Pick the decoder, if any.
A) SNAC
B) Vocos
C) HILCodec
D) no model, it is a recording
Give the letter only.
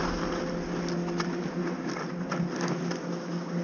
D